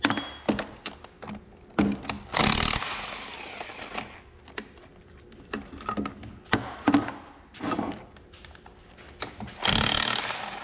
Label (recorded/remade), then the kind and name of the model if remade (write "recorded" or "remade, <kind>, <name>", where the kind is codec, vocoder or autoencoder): recorded